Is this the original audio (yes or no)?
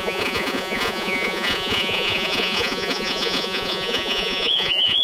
no